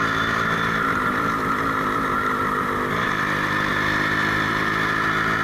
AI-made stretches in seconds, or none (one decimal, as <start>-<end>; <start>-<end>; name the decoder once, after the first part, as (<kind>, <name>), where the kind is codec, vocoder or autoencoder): 0.0-3.7 (vocoder, BigVGAN v2); 4.5-5.4